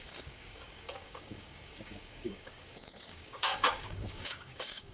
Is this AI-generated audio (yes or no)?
yes